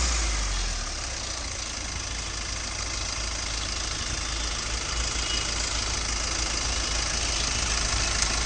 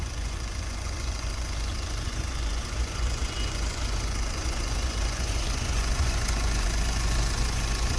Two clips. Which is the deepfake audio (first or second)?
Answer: second